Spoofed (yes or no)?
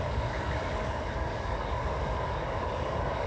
yes